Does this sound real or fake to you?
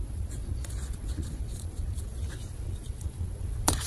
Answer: fake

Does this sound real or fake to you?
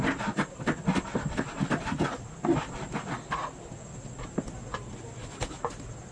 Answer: real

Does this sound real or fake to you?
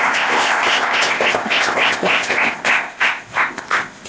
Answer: fake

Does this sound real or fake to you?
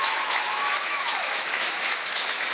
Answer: fake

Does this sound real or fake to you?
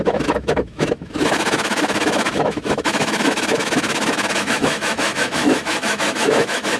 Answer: fake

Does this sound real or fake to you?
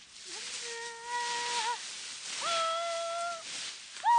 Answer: real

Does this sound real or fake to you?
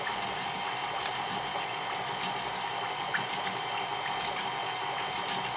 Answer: real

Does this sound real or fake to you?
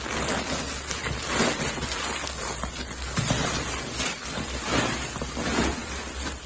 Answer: real